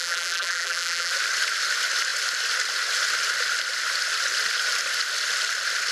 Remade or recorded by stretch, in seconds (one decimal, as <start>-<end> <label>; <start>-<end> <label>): 0.0-1.1 remade; 1.1-5.9 recorded